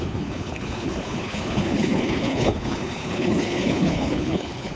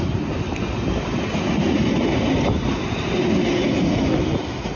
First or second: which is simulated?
first